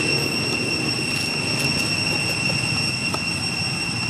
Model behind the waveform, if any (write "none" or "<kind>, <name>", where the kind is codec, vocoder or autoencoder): none